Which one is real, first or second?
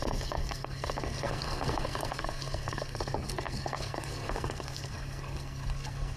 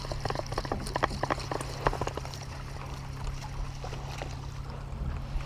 second